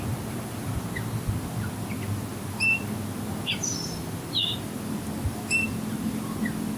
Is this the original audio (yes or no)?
yes